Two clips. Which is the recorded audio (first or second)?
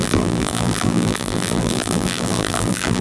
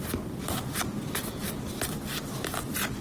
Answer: second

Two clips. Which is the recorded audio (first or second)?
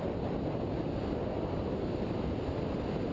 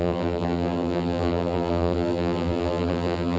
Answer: first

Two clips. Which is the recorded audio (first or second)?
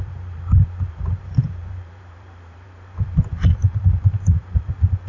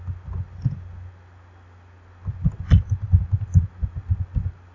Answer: second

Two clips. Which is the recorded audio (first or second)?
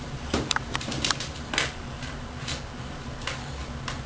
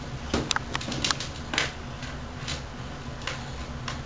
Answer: second